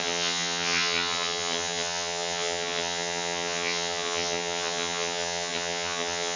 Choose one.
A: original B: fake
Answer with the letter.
B